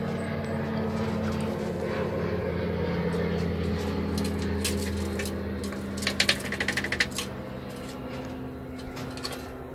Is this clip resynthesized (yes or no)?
no